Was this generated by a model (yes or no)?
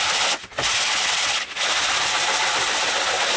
no